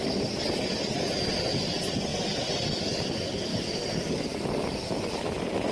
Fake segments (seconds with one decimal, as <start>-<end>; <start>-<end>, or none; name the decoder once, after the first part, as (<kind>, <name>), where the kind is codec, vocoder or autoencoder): none